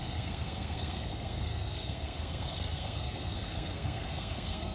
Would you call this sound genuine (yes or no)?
no